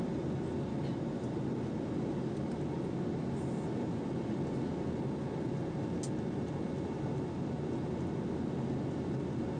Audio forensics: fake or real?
real